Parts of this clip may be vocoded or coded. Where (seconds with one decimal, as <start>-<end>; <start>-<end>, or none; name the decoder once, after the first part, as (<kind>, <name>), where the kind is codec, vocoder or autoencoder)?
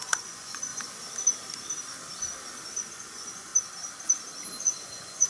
0.0-0.7 (vocoder, Vocos); 2.9-3.5; 4.6-5.3